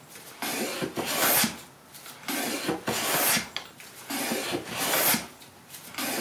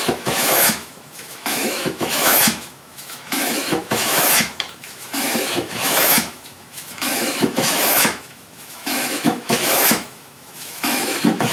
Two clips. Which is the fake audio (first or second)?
second